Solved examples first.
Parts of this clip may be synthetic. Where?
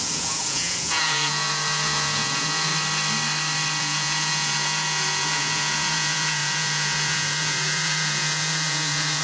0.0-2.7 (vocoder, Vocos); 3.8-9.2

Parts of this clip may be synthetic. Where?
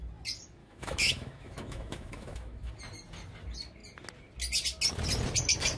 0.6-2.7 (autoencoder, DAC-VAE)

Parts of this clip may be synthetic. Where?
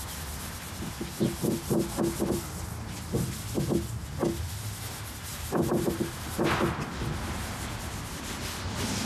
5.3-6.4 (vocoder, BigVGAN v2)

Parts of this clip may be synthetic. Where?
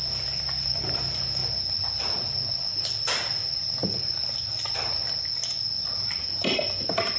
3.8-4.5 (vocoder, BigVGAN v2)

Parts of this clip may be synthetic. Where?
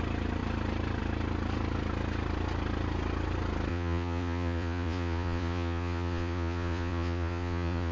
3.7-7.9 (vocoder, Vocos)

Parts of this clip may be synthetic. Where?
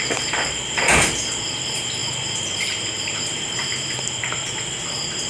0.0-5.3 (vocoder, BigVGAN v2)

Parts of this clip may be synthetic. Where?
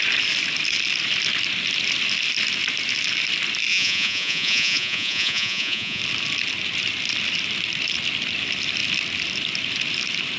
3.7-6.0 (vocoder, Vocos)